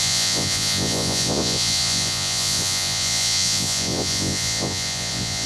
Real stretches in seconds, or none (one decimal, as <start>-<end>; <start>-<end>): none